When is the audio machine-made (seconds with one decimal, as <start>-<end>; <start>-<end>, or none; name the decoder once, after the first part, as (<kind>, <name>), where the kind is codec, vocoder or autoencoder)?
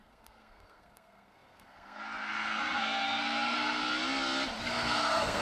0.0-3.8 (codec, SNAC); 4.6-5.4